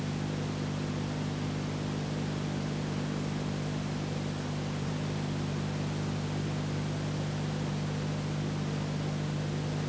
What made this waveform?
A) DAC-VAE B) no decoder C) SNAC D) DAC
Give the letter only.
B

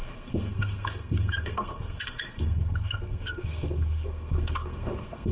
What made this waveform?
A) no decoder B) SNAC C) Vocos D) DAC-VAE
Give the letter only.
B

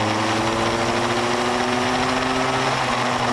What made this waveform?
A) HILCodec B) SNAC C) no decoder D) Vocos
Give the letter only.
C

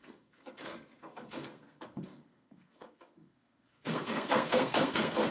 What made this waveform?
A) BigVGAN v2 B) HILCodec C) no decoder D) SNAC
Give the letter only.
D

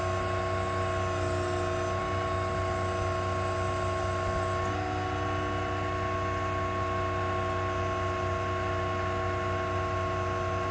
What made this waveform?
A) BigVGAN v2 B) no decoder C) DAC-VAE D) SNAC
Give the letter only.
B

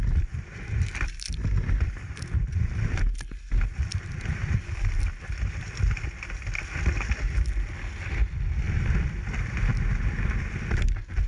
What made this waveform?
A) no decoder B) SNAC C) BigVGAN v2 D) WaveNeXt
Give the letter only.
A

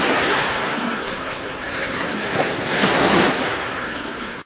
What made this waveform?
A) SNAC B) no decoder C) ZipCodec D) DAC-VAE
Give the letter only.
A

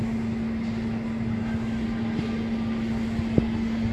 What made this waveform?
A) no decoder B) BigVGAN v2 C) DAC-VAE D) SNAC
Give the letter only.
A